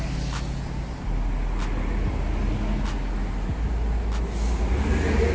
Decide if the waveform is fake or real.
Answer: real